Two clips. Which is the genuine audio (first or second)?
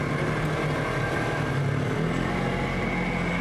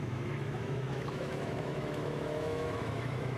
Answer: first